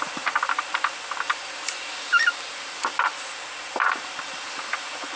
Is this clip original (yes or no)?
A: yes